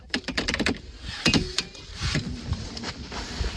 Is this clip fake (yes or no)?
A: yes